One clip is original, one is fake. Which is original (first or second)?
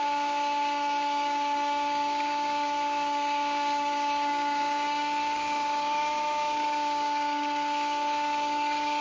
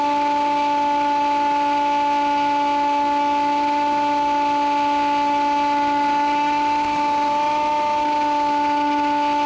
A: second